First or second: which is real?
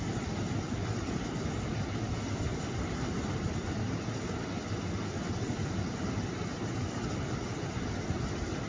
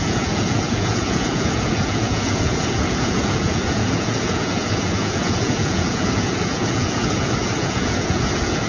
first